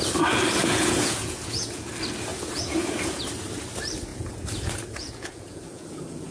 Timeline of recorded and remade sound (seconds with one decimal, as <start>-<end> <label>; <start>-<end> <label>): 0.0-0.6 recorded; 0.6-1.9 remade; 1.9-2.3 recorded; 2.3-3.2 remade; 3.2-4.1 recorded; 4.1-6.3 remade